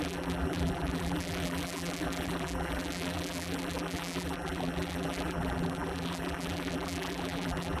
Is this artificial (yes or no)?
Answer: yes